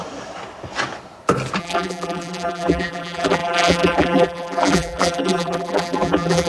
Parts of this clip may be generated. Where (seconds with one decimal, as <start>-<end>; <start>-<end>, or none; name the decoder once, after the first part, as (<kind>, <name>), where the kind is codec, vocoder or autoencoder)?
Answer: 1.6-6.5 (vocoder, BigVGAN v2)